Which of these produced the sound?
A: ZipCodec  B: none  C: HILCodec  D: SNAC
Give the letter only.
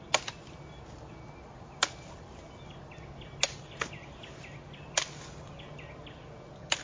B